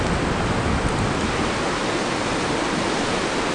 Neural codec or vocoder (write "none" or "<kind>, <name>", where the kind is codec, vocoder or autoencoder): none